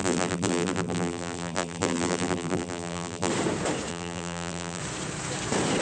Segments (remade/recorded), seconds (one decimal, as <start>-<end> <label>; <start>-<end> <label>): 0.0-3.3 remade; 3.3-3.9 recorded; 3.9-4.8 remade; 4.8-5.8 recorded